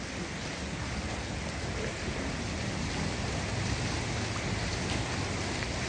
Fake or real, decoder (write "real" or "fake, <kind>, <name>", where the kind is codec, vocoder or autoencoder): real